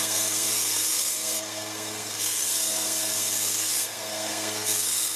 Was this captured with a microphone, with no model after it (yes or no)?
no